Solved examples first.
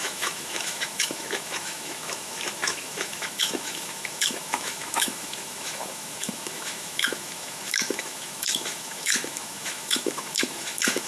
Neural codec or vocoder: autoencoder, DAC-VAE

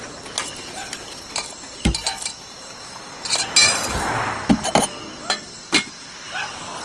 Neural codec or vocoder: none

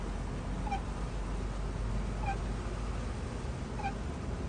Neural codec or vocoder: none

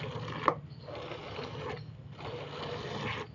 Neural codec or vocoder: none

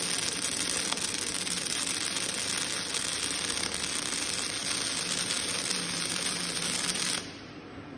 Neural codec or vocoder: none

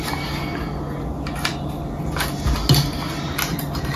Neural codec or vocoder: none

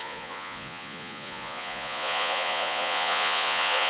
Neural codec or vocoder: vocoder, Vocos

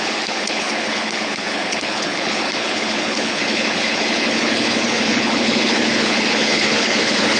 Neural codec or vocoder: codec, HILCodec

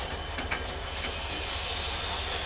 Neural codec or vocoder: none